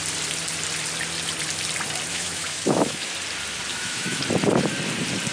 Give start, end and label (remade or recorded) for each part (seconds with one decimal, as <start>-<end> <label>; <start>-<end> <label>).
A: 0.0-2.1 recorded; 2.1-3.1 remade; 3.1-3.7 recorded; 3.7-4.2 remade; 4.2-5.3 recorded